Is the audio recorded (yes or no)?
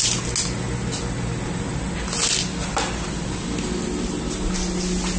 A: yes